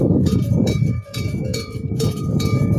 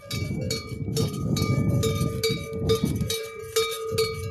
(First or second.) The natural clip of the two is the second